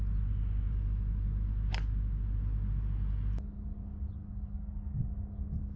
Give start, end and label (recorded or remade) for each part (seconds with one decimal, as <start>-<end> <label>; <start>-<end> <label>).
0.0-5.8 recorded

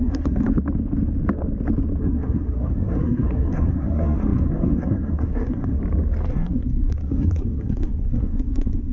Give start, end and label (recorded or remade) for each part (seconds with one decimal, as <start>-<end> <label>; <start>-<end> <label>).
0.0-0.5 remade; 0.5-2.0 recorded; 2.0-5.8 remade; 5.8-6.3 recorded; 6.3-8.9 remade

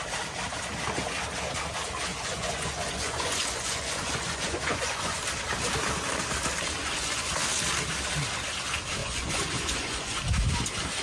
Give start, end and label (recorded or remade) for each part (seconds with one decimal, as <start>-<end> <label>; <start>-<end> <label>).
0.0-2.1 recorded; 2.1-5.2 remade; 5.2-6.8 recorded; 6.8-7.3 remade; 7.3-9.0 recorded; 9.0-10.2 remade; 10.2-11.0 recorded